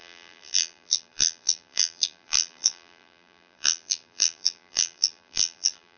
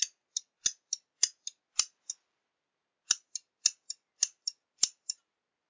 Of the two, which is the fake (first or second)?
first